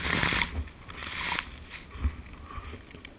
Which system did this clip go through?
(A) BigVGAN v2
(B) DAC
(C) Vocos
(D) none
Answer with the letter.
D